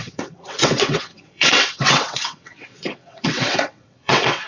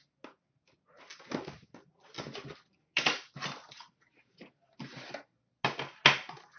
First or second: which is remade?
first